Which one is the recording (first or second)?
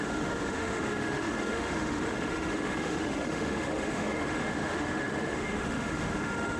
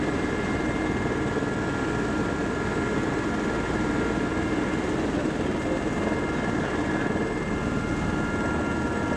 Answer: second